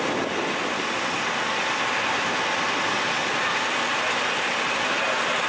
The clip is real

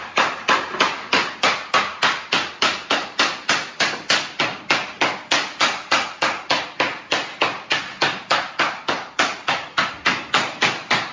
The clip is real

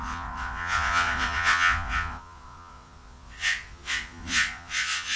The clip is fake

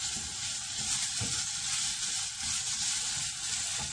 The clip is real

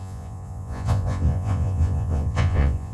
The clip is fake